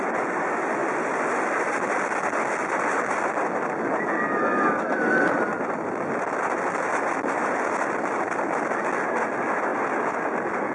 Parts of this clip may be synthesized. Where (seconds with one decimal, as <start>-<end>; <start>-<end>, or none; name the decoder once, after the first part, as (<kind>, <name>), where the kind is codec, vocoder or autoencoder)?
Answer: none

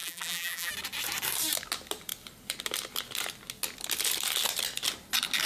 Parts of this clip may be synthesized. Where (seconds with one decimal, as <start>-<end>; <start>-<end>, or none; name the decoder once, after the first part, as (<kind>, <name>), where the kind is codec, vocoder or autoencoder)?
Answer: 0.0-0.7 (vocoder, BigVGAN v2)

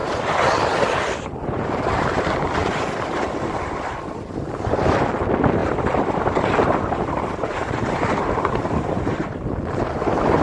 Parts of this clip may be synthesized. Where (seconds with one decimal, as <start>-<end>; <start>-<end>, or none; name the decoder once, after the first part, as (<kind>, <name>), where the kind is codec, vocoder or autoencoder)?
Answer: 2.6-4.3 (vocoder, BigVGAN v2)

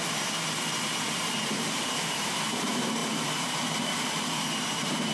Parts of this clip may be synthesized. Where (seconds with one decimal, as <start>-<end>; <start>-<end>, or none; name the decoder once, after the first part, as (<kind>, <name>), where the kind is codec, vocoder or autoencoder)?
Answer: none

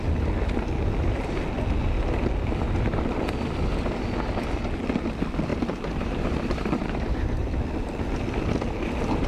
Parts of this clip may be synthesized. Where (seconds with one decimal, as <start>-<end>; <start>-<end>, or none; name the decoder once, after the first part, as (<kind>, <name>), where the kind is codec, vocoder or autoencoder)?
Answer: 5.5-7.5 (vocoder, BigVGAN v2)